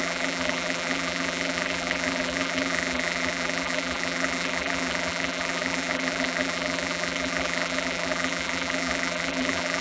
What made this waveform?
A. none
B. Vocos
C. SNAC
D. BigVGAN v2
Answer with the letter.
D